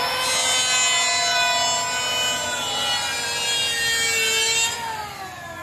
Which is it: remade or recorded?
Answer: recorded